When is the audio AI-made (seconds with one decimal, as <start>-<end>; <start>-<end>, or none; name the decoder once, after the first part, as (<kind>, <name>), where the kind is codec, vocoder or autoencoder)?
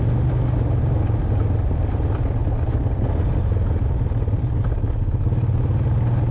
none